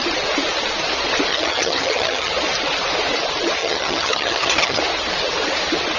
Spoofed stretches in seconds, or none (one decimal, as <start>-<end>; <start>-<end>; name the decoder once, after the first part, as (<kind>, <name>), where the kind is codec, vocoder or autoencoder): 1.3-2.3 (vocoder, HiFi-GAN); 3.6-4.8